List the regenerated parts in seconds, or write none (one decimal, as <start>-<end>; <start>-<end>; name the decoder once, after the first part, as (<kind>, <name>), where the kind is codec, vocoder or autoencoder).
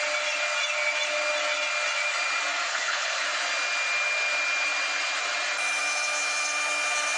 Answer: 2.7-3.2 (codec, HILCodec)